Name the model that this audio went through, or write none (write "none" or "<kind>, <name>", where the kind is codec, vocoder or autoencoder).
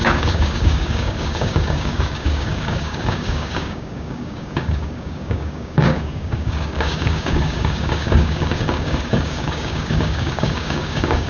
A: codec, DAC